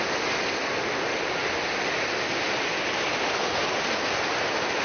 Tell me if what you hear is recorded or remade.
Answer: recorded